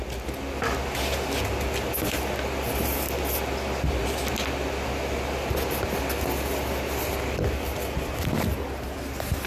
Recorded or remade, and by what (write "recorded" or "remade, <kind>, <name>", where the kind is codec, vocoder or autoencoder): recorded